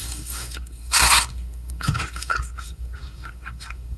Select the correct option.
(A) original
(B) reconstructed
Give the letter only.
B